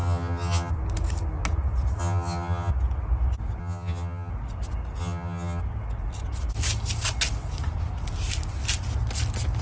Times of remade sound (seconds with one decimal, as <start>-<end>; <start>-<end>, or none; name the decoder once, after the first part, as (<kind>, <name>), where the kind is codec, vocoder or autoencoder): 0.0-0.7 (vocoder, HiFi-GAN); 2.0-2.7; 3.6-4.3; 5.0-5.6